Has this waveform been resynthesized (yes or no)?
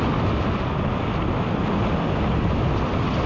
no